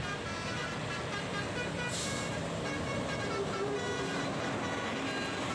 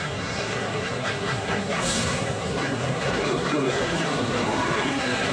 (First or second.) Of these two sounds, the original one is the first